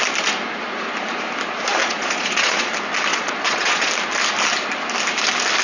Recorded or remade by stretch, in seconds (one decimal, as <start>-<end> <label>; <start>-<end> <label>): 0.0-1.8 recorded; 1.8-2.7 remade; 2.7-3.1 recorded; 3.1-3.9 remade; 3.9-5.6 recorded